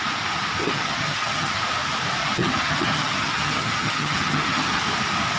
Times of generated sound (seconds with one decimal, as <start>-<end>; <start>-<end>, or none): 0.6-1.6; 2.2-4.8